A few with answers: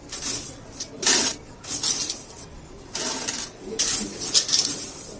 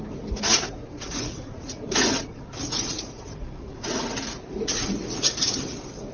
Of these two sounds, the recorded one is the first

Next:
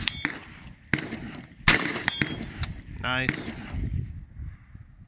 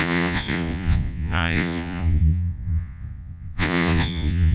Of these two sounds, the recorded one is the first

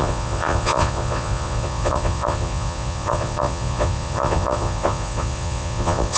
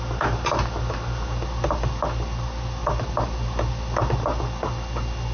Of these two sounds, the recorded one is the second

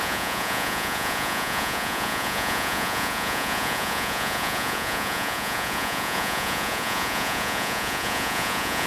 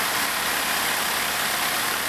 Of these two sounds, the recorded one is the second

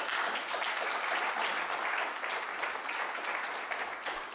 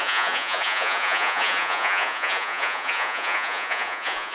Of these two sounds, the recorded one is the first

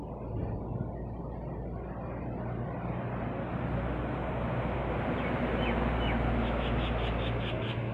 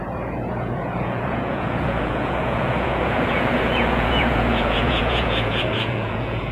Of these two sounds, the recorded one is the first